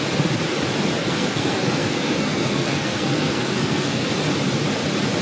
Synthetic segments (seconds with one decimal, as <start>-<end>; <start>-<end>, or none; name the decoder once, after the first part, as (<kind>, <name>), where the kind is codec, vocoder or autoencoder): 1.0-4.1 (codec, SNAC)

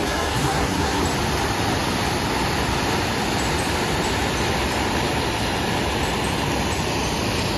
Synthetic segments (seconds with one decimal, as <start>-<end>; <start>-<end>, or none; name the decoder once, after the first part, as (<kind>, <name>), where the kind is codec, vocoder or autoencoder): 0.0-1.0 (codec, SNAC)

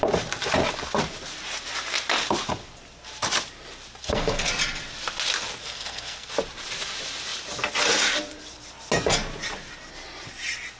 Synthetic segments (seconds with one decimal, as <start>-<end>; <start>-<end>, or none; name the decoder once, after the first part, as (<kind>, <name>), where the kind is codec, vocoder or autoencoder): 4.0-4.5 (codec, SNAC); 5.6-6.3

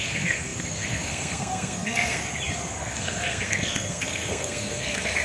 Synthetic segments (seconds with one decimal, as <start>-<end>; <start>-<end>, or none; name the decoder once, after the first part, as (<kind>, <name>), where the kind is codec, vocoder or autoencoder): 0.0-2.2 (codec, SNAC); 2.8-5.2